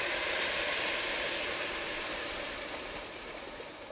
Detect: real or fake fake